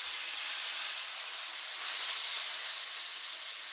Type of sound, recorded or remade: recorded